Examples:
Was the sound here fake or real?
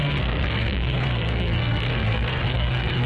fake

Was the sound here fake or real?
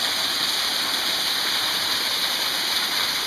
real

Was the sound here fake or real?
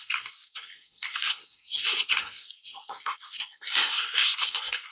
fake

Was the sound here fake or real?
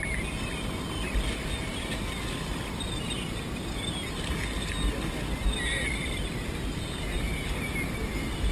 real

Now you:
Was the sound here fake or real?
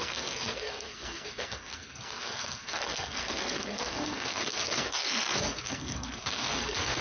fake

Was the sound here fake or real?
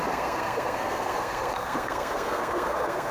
fake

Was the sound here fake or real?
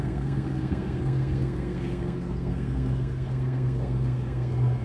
fake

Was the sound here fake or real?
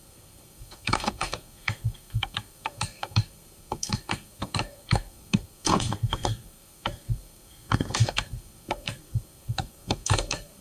fake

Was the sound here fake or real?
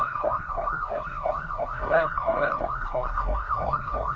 fake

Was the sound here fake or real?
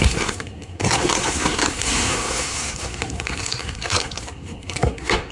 fake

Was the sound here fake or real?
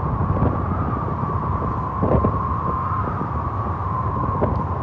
real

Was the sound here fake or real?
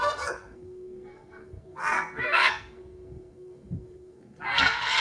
fake